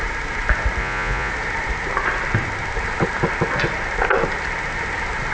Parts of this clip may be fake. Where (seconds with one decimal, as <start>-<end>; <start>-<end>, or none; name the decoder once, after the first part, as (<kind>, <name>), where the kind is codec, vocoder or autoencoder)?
0.8-1.3 (vocoder, Vocos)